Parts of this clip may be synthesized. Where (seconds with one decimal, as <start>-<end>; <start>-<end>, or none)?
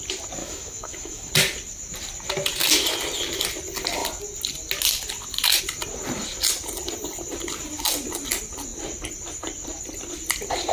0.4-1.3